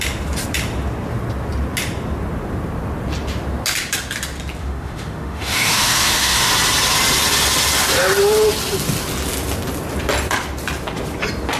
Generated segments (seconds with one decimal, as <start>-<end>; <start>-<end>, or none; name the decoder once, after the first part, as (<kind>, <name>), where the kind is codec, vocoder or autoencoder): 4.6-6.5 (autoencoder, DAC-VAE)